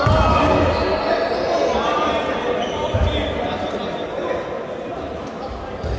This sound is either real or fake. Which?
real